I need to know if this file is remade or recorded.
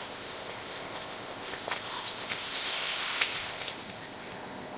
remade